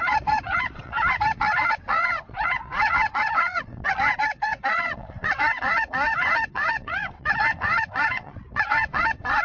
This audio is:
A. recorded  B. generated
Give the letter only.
B